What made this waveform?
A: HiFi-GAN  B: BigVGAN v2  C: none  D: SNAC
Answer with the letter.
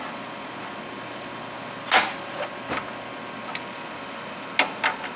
C